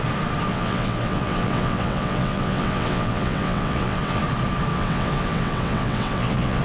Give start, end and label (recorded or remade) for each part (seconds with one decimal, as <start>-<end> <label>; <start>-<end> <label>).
0.0-0.5 recorded; 0.5-4.2 remade; 4.2-4.7 recorded; 4.7-6.6 remade

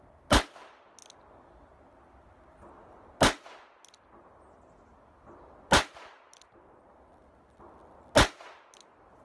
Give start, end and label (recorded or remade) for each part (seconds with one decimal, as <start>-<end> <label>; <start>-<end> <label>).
0.0-9.2 recorded

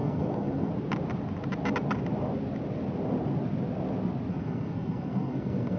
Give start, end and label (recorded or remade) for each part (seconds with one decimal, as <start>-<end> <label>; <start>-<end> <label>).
0.0-0.7 remade; 0.7-4.3 recorded; 4.3-5.8 remade

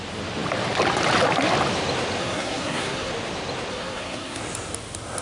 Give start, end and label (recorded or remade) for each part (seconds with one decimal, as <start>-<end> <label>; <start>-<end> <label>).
0.0-2.2 recorded; 2.2-3.1 remade; 3.1-3.7 recorded; 3.7-4.4 remade; 4.4-5.2 recorded

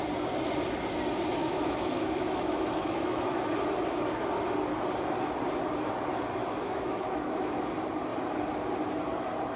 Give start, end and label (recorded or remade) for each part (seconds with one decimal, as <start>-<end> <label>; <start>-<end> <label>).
0.0-1.4 recorded; 1.4-3.4 remade; 3.4-6.4 recorded; 6.4-7.6 remade; 7.6-9.6 recorded

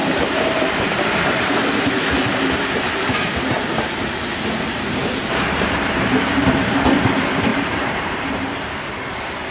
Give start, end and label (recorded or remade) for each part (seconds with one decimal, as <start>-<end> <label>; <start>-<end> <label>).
0.0-4.0 remade; 4.0-5.0 recorded; 5.0-6.3 remade; 6.3-7.5 recorded; 7.5-8.9 remade; 8.9-9.5 recorded

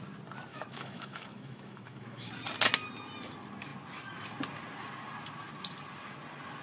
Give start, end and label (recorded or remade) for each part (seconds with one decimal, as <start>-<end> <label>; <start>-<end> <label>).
0.0-0.5 recorded; 0.5-2.3 remade; 2.3-6.6 recorded